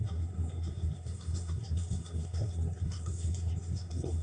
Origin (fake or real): fake